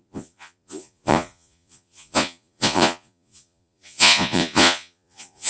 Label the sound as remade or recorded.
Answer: remade